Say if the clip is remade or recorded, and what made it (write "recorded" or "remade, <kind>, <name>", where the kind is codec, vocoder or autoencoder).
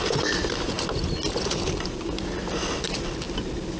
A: recorded